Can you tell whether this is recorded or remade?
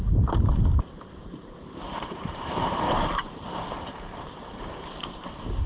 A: remade